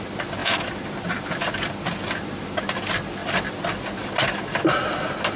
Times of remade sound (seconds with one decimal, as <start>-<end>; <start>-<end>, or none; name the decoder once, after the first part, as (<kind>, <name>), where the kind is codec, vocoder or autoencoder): none

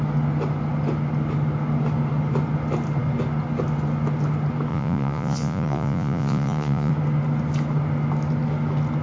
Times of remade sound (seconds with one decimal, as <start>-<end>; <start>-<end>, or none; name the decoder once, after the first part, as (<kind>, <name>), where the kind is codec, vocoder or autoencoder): 4.7-6.9 (vocoder, Vocos)

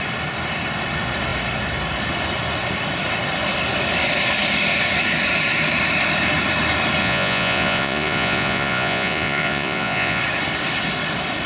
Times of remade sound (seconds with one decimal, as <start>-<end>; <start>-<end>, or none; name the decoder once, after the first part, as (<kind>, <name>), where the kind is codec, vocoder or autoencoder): 7.0-10.2 (vocoder, Vocos)